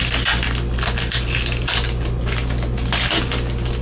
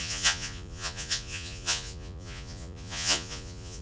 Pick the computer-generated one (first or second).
second